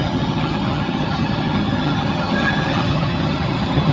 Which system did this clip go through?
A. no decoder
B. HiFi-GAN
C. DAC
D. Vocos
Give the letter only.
B